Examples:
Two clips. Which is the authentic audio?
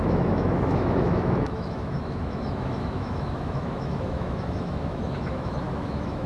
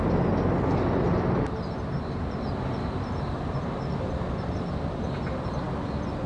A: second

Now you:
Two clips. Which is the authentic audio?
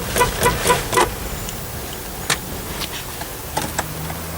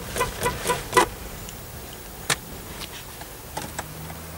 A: first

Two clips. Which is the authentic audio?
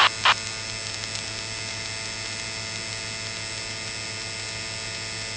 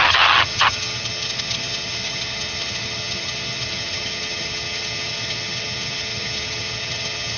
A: first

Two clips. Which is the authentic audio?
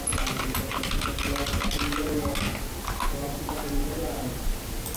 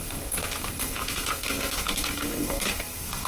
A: first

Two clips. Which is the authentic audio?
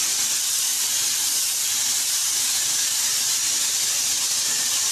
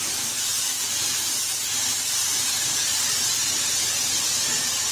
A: second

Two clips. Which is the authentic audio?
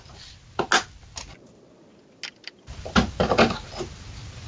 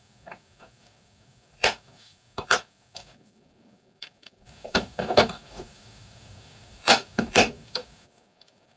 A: first